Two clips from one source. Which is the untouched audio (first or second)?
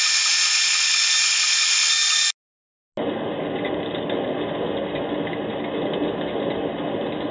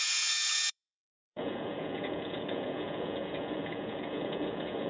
first